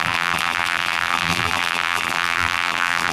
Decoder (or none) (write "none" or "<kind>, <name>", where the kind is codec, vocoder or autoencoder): vocoder, BigVGAN v2